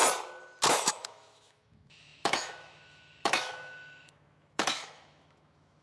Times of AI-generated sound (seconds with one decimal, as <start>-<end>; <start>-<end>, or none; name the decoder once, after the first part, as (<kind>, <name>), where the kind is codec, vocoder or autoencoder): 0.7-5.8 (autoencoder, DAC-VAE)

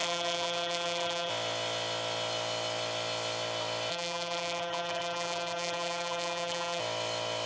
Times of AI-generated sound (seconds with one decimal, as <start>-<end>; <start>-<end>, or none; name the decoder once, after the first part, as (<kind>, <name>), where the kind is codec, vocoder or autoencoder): 0.0-1.3 (vocoder, BigVGAN v2); 3.9-6.8

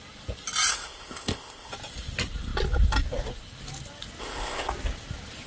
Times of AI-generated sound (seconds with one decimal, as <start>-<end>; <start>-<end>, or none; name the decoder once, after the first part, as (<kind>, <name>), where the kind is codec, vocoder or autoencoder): 0.7-1.7 (codec, ZipCodec); 4.2-4.7

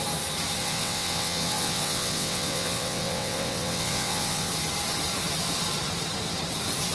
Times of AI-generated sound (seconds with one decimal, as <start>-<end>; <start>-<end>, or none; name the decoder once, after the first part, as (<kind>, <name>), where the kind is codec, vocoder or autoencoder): 0.6-4.5 (vocoder, WaveNeXt)

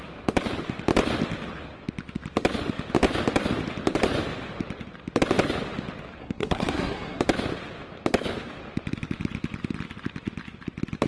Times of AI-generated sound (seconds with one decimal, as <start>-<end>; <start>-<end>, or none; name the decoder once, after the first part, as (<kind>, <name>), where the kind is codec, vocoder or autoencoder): 6.2-7.2 (codec, SNAC)

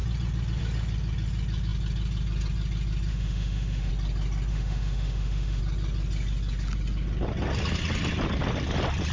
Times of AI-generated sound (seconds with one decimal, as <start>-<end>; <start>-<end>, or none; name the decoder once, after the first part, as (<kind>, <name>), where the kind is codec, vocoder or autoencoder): 3.1-3.9 (autoencoder, DAC-VAE); 4.5-5.6